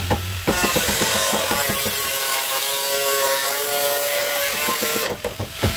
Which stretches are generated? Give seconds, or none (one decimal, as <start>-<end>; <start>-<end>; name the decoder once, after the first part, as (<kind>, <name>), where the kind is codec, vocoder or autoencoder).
0.0-1.6 (codec, DAC); 2.1-5.8